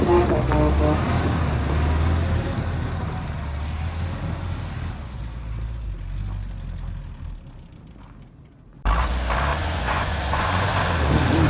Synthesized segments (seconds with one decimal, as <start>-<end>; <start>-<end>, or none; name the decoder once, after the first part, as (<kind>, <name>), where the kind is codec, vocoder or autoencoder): 9.5-10.7 (vocoder, Vocos)